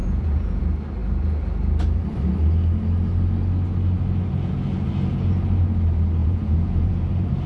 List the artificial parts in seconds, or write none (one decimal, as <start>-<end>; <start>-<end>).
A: 0.0-0.6; 6.2-7.1